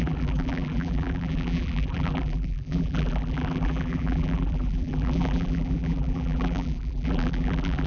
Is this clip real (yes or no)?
no